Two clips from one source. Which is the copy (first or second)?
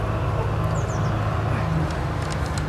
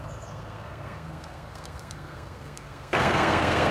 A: second